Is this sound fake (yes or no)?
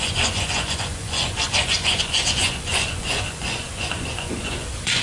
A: yes